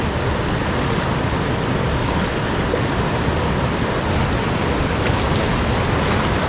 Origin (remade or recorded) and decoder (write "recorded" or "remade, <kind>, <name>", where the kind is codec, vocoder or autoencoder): recorded